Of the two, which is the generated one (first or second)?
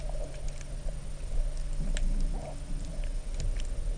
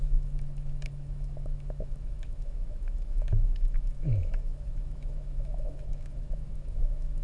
second